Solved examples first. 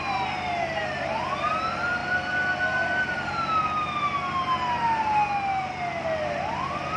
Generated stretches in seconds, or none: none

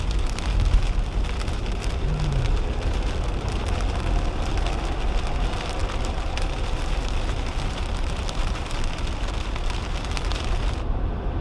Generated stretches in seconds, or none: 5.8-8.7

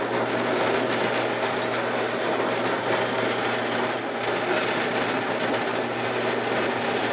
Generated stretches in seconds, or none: 5.7-7.1

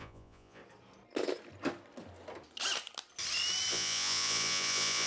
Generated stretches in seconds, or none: 0.0-0.6; 3.7-5.1